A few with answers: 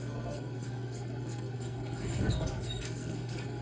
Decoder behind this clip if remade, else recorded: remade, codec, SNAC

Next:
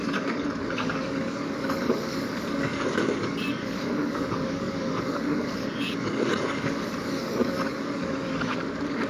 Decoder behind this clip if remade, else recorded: remade, codec, DAC